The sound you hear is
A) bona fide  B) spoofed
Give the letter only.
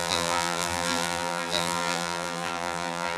B